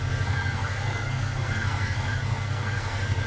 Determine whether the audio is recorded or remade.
remade